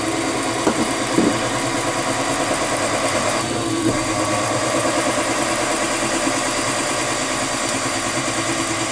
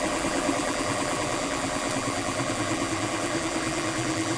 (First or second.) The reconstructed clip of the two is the second